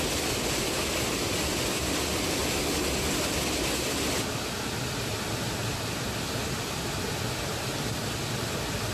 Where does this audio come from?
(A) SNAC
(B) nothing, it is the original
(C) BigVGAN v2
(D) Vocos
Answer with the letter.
B